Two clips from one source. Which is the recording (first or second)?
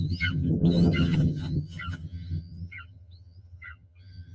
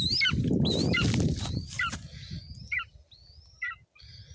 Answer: second